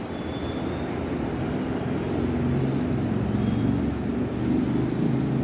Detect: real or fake real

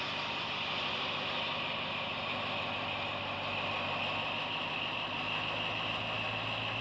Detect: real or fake real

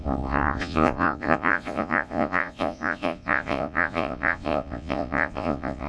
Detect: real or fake fake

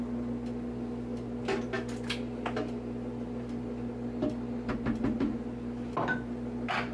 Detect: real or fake real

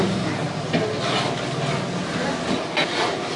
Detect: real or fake real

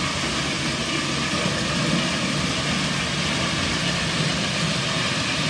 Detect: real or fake real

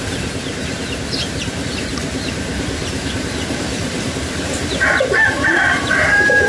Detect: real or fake fake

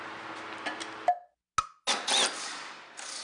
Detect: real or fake real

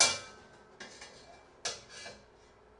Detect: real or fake real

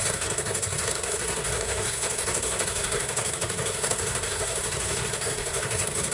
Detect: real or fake fake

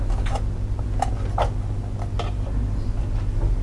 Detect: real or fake real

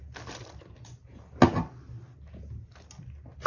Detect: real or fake real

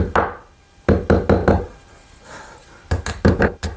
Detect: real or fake real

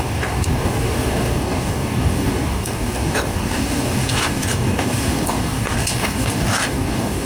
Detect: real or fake fake